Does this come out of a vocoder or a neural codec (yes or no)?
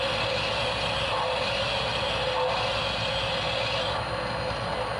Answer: no